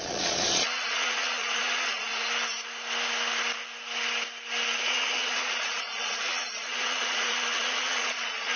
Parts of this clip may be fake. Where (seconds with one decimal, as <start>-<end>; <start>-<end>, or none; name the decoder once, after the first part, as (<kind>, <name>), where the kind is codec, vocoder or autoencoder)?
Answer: 0.0-2.1 (vocoder, Vocos); 4.8-8.6